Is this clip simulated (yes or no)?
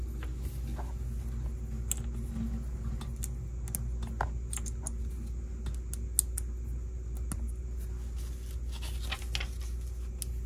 no